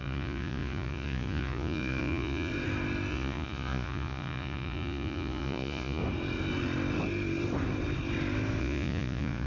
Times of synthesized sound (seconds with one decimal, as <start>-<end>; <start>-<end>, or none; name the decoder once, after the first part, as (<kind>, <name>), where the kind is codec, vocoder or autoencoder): 0.0-2.5 (vocoder, Vocos); 3.1-6.0; 8.6-9.5